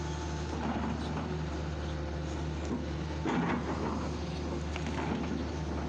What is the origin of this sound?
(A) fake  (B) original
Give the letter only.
B